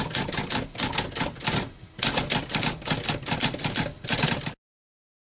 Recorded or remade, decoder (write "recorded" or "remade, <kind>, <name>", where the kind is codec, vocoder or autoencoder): recorded